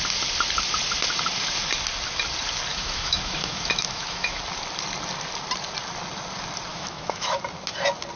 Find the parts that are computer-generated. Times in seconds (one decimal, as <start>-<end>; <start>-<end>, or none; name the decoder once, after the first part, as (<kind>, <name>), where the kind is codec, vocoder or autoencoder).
2.7-4.4 (autoencoder, DAC-VAE); 6.7-7.4